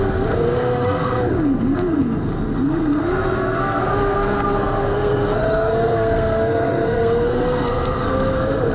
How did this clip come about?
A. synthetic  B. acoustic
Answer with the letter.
A